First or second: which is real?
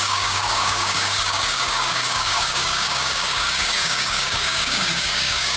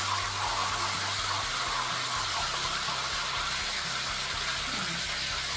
second